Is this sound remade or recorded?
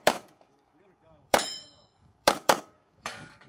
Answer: remade